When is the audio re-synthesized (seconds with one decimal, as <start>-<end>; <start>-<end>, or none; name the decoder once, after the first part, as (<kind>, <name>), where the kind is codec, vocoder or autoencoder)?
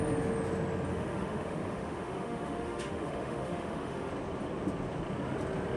0.9-4.1 (autoencoder, DAC-VAE)